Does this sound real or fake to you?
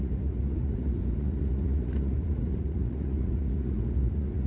fake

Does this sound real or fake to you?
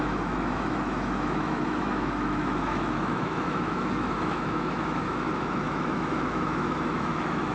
fake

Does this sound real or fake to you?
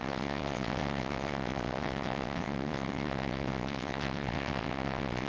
fake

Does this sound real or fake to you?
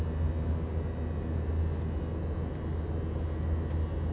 real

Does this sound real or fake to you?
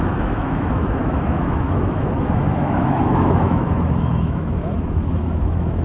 fake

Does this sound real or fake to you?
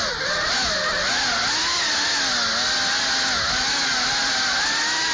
real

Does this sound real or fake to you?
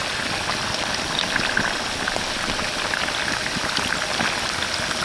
real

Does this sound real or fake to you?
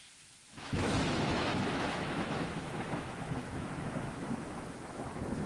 fake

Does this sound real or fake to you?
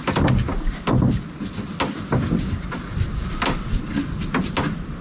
real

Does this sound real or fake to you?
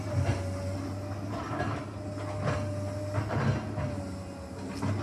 real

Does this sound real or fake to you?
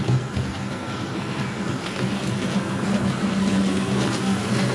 fake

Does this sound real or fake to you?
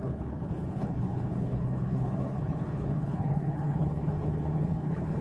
fake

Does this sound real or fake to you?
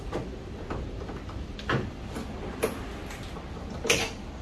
real